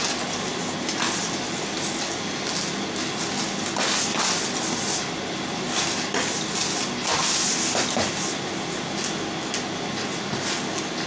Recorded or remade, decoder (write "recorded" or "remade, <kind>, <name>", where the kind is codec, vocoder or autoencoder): recorded